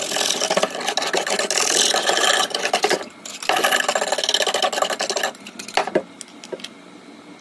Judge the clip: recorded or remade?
recorded